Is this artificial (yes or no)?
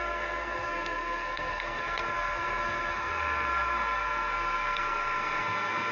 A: yes